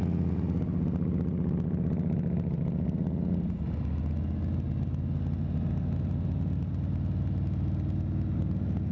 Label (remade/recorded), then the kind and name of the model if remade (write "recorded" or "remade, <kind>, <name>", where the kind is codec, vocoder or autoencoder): recorded